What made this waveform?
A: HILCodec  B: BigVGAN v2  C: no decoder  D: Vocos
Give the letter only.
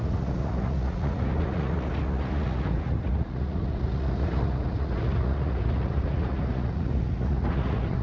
D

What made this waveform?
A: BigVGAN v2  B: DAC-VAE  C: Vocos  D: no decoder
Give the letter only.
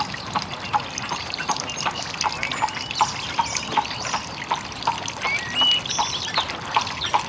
D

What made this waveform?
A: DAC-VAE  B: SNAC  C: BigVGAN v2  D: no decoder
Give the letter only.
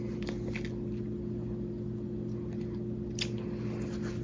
D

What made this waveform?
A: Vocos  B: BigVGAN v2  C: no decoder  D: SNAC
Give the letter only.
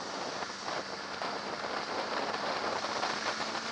C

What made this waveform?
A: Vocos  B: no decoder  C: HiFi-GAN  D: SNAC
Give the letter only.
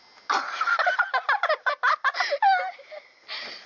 B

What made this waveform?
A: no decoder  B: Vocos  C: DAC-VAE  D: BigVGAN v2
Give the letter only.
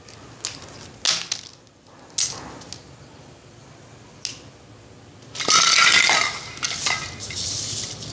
A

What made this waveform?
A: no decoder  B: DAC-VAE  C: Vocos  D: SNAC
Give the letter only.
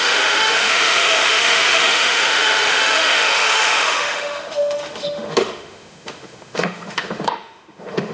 B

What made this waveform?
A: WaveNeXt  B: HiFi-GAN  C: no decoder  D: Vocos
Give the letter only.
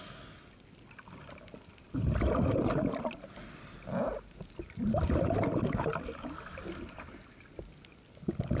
C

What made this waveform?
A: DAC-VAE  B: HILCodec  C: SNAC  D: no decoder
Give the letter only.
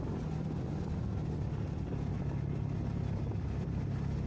D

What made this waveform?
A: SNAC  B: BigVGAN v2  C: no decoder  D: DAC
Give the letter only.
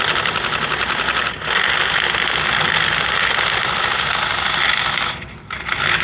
C